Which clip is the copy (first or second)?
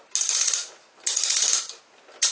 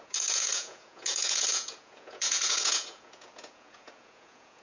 second